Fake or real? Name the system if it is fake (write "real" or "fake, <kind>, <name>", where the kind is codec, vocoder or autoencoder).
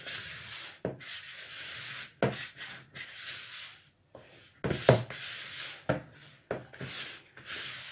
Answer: real